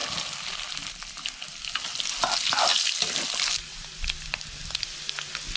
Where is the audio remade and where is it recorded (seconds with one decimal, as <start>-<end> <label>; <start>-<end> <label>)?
0.0-5.6 recorded